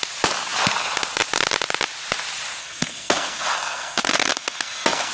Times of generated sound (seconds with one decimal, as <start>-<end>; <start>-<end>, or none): 2.6-5.1